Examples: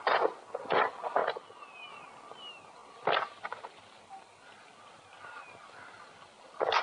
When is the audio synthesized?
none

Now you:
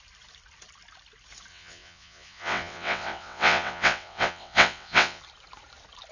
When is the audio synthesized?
1.5-5.2 (vocoder, WaveNeXt)

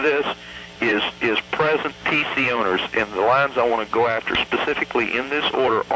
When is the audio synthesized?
0.0-2.6 (vocoder, BigVGAN v2); 3.7-6.0

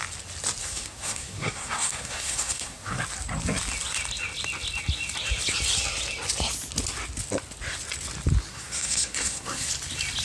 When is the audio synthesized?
0.6-3.0 (codec, SNAC); 8.5-9.7